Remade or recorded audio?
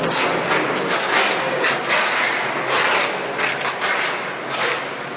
recorded